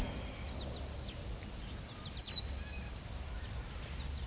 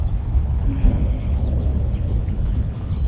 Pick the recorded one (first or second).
first